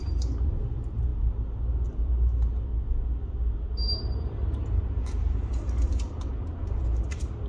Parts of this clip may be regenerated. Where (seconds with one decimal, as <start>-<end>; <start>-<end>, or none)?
0.0-2.7; 4.0-7.5